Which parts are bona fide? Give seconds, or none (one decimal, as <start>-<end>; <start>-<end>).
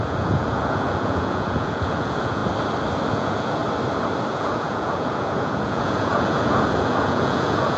2.4-3.1; 3.6-4.3